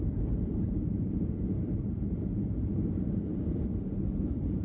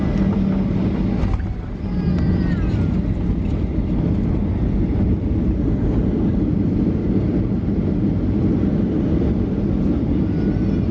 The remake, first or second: first